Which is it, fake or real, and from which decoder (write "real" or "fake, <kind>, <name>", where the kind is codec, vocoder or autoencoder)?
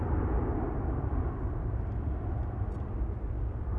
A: real